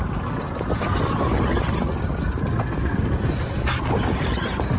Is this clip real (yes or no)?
yes